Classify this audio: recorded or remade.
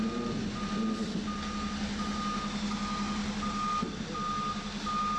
recorded